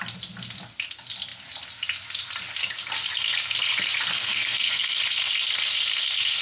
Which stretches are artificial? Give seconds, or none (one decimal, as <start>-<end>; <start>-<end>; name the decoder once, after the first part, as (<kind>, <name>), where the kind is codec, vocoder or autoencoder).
4.2-5.0 (codec, SNAC)